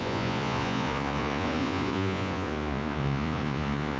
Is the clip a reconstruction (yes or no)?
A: yes